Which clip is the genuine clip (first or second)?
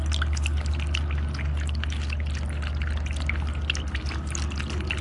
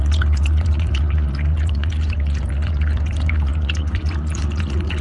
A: first